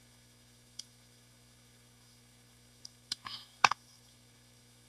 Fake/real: fake